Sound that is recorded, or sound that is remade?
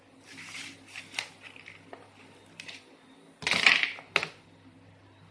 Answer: recorded